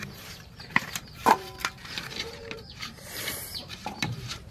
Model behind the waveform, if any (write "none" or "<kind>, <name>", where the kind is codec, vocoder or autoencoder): vocoder, BigVGAN v2